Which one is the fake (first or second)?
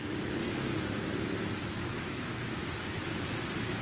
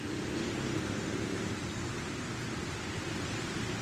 first